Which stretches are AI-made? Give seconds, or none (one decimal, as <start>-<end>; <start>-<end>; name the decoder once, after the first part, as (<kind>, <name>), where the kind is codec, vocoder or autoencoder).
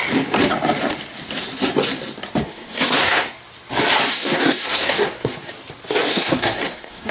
2.4-3.4 (codec, SNAC); 4.1-5.5; 6.1-7.1